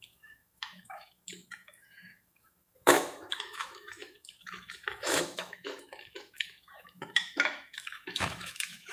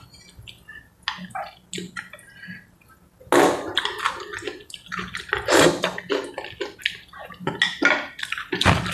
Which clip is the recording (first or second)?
second